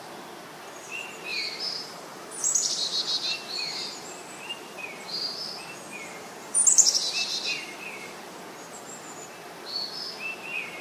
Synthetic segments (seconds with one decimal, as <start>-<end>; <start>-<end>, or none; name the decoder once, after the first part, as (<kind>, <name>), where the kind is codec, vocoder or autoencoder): 1.3-5.4 (vocoder, BigVGAN v2); 6.0-8.2